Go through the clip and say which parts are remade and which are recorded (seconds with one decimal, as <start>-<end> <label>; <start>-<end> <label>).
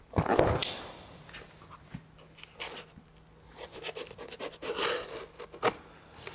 0.0-6.3 recorded